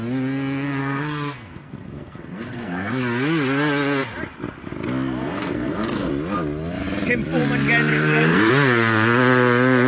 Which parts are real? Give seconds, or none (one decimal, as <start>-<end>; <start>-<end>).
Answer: 0.0-0.8; 3.0-5.2; 6.1-7.9; 8.5-9.9